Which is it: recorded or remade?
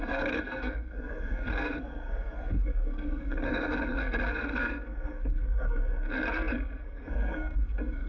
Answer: remade